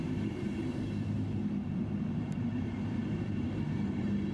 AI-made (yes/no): yes